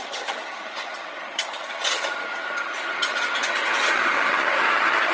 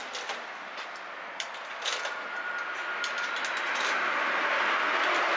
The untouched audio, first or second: second